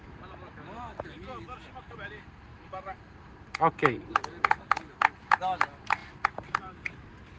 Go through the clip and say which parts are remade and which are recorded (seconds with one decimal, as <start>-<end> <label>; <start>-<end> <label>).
0.0-7.4 recorded